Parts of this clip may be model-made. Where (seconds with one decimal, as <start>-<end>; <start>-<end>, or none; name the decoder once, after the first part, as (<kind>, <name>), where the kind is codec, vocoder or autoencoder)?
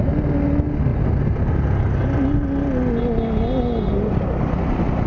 none